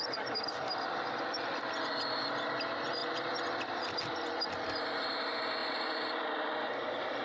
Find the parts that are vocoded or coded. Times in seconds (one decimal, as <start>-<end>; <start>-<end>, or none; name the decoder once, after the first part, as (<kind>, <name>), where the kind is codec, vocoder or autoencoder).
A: none